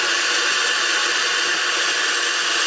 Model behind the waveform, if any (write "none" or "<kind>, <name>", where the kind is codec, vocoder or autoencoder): none